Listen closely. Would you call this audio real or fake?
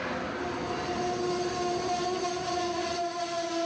real